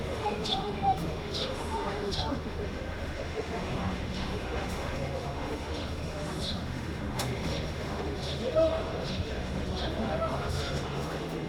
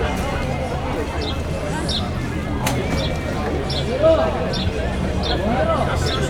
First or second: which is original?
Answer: second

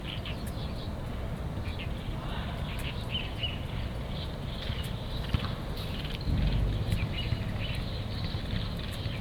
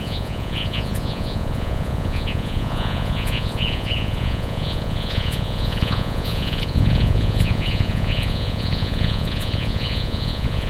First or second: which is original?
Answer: first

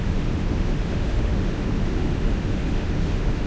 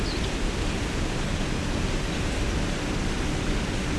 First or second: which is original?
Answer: second